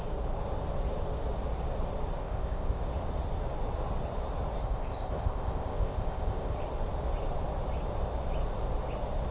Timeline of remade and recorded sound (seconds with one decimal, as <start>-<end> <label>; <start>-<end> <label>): 0.0-2.2 recorded; 2.2-2.8 remade; 2.8-4.6 recorded; 4.6-6.5 remade; 6.5-9.3 recorded